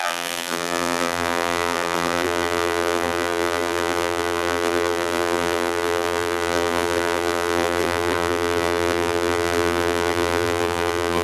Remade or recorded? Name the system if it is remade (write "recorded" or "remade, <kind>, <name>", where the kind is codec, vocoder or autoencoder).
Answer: remade, vocoder, BigVGAN v2